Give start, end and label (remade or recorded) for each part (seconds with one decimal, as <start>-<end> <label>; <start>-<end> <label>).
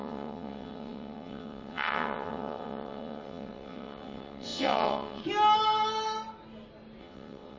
0.0-5.2 remade; 5.2-7.0 recorded; 7.0-7.6 remade